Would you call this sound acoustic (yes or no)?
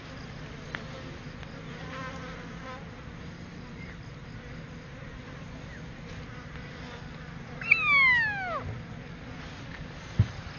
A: yes